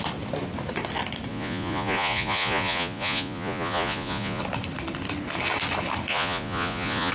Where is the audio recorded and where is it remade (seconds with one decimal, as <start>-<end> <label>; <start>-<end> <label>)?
0.0-1.3 recorded; 1.3-4.4 remade; 4.4-6.1 recorded; 6.1-7.1 remade